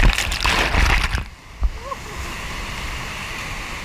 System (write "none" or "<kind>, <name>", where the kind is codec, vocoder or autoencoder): none